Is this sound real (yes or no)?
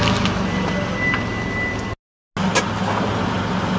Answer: yes